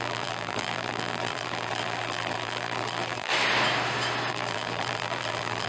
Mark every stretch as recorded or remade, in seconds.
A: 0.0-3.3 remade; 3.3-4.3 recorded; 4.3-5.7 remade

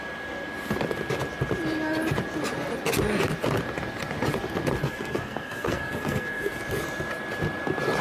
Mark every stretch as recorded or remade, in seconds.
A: 0.0-4.8 recorded; 4.8-6.6 remade; 6.6-8.0 recorded

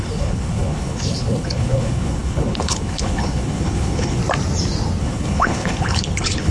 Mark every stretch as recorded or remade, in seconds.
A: 0.0-4.2 remade; 4.2-5.0 recorded; 5.0-6.5 remade